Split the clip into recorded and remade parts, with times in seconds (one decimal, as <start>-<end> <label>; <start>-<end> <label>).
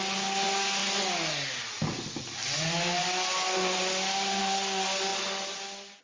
0.0-6.0 recorded